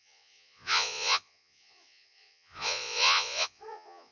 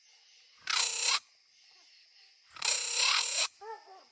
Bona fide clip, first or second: second